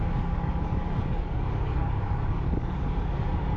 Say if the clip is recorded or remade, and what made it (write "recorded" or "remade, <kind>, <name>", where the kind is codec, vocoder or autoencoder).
remade, codec, DAC